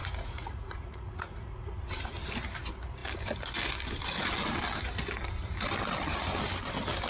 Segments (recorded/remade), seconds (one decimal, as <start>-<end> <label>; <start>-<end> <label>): 0.0-1.7 remade; 1.7-7.1 recorded